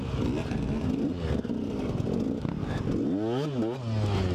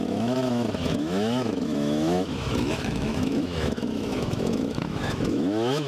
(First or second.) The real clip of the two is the first